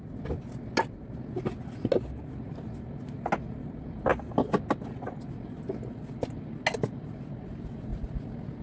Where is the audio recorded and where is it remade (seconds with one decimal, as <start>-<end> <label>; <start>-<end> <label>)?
0.0-8.6 recorded